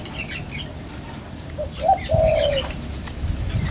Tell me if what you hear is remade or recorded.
recorded